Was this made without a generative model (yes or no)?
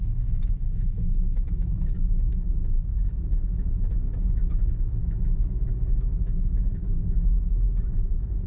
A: no